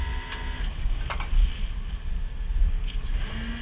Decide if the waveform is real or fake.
real